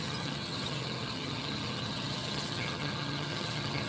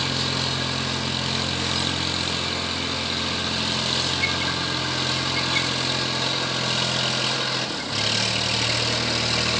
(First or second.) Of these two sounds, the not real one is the first